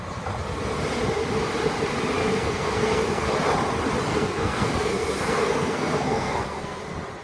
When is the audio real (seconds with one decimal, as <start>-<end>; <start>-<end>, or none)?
0.0-2.2; 3.3-4.1; 6.8-7.2